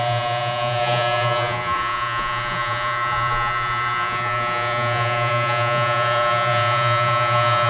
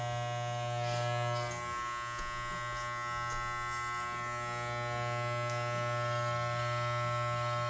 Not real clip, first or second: first